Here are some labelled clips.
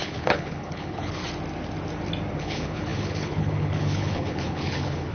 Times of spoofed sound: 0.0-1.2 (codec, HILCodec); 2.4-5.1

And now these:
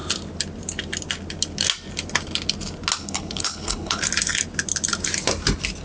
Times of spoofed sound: 3.0-4.0 (codec, HILCodec)

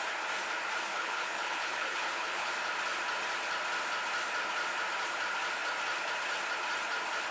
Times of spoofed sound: 0.9-2.5 (codec, HILCodec)

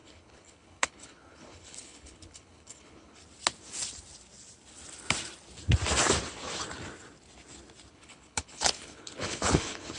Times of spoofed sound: 0.0-3.2 (codec, HILCodec); 7.9-10.0